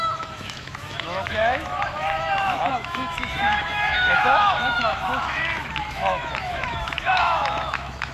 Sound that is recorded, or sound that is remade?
remade